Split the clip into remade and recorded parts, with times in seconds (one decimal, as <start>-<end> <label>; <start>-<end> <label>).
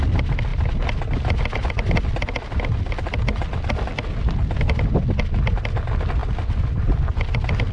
0.0-7.7 recorded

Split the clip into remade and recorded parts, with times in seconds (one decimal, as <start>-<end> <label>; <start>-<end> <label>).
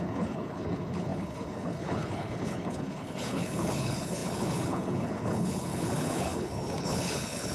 0.0-7.5 remade